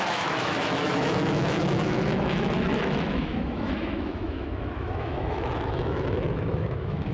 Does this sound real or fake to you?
fake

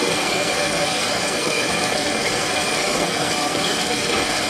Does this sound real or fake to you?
fake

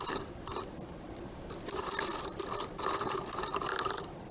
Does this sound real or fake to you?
real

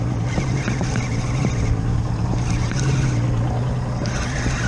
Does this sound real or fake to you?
real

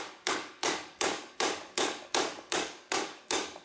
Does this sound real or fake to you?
fake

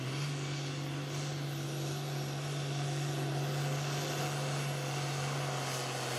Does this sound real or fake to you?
real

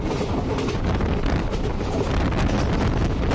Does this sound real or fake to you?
real